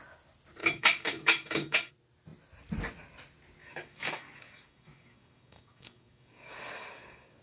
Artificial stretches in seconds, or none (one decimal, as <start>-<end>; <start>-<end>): 0.6-1.9; 3.6-7.4